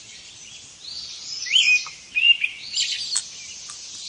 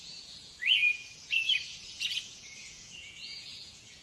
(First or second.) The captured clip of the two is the first